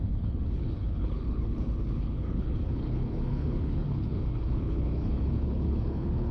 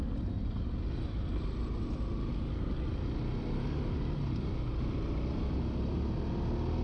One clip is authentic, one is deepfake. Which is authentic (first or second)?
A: second